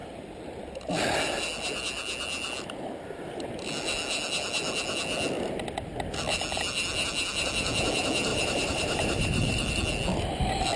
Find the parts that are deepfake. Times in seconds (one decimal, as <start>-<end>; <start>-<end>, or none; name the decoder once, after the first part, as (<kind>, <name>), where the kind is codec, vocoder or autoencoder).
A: 8.3-9.7 (vocoder, BigVGAN v2)